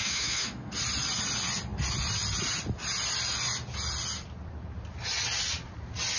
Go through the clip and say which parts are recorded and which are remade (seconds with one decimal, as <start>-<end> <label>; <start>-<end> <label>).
0.0-0.7 remade; 0.7-6.2 recorded